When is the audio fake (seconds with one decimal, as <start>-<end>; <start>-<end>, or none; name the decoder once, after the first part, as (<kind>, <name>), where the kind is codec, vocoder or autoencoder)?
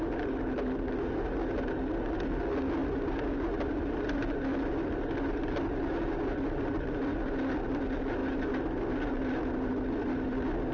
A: none